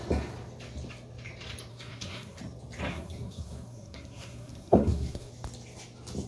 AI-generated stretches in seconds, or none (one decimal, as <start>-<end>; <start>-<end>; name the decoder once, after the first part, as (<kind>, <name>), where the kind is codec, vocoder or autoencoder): 1.7-2.4 (codec, SNAC); 2.9-5.3